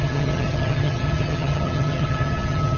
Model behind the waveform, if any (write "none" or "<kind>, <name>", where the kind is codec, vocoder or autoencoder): vocoder, HiFi-GAN